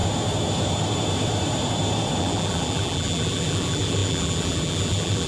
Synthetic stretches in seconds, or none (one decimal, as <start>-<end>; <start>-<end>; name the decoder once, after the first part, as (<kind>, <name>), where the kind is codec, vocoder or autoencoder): 2.2-5.3 (vocoder, BigVGAN v2)